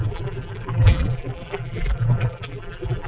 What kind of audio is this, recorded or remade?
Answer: remade